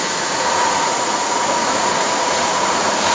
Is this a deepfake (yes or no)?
yes